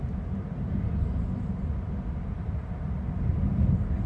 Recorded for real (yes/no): yes